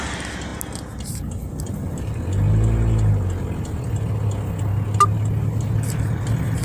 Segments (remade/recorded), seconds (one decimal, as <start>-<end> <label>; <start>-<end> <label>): 0.0-6.6 recorded